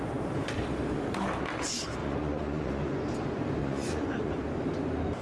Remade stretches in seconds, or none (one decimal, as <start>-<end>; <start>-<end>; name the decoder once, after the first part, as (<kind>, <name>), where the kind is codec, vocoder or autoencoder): 2.0-3.0 (vocoder, Vocos); 3.6-4.3